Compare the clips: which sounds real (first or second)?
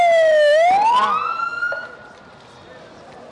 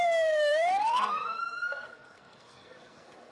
first